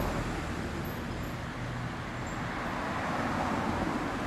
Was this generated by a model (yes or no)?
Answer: no